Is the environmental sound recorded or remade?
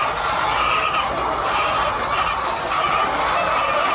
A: recorded